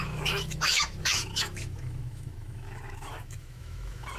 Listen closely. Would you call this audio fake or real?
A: fake